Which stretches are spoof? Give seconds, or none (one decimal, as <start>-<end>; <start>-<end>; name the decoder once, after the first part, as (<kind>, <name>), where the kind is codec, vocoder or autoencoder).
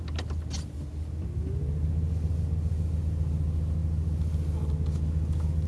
none